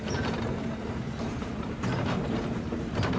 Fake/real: fake